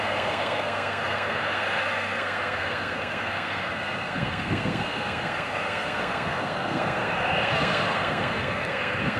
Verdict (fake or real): fake